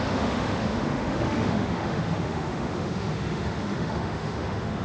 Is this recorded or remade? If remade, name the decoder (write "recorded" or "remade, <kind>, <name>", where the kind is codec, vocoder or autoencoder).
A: remade, autoencoder, DAC-VAE